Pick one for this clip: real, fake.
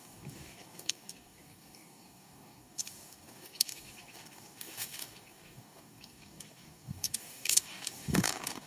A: fake